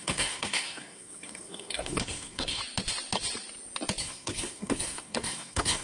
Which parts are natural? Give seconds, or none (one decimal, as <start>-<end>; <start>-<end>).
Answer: 2.6-4.0